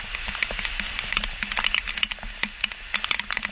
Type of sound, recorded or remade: recorded